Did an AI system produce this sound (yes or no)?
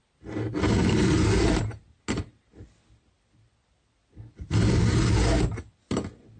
no